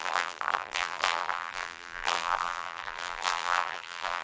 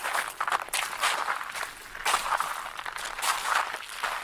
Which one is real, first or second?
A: second